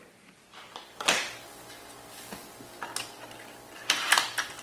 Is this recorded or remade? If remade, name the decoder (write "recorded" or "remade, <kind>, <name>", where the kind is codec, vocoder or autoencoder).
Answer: recorded